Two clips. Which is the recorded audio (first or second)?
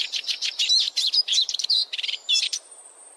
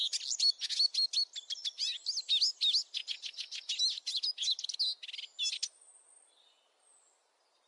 second